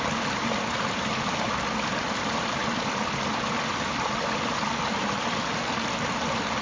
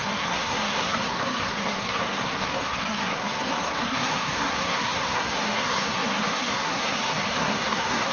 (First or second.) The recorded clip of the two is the first